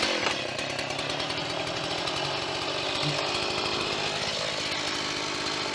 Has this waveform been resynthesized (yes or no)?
no